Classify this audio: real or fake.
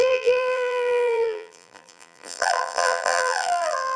fake